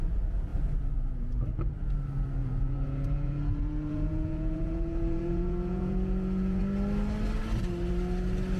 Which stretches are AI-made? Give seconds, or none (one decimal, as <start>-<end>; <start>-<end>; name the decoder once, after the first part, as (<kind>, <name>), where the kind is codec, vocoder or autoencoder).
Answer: 2.4-6.6 (vocoder, Vocos)